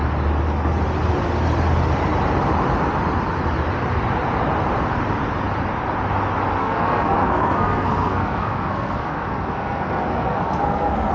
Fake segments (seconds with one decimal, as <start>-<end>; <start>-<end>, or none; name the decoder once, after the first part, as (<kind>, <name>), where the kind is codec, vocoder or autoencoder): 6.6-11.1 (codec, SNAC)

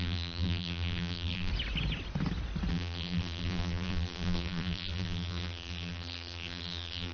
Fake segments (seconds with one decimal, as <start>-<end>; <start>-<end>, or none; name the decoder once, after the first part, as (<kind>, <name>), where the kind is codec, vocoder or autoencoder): 0.0-1.5 (vocoder, BigVGAN v2); 2.7-7.1

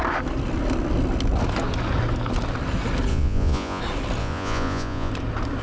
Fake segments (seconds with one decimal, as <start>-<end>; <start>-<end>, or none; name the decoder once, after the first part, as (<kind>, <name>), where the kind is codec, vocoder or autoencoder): 3.1-3.8 (vocoder, Vocos); 4.2-5.1

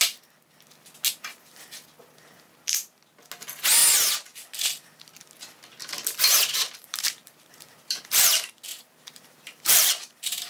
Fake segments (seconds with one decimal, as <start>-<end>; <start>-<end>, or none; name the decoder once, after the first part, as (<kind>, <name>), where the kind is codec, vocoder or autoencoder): 6.8-8.1 (vocoder, BigVGAN v2); 8.7-10.5

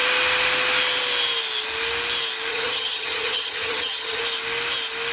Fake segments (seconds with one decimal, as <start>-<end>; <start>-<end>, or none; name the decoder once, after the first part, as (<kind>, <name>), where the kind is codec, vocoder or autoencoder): 2.5-4.2 (vocoder, HiFi-GAN)